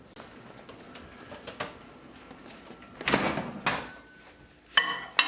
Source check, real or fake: real